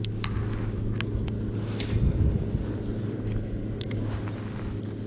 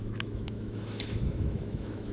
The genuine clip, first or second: first